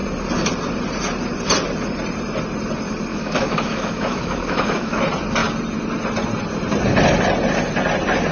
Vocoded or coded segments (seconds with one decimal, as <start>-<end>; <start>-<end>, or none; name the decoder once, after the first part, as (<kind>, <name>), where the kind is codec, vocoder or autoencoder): 3.1-5.0 (autoencoder, DAC-VAE)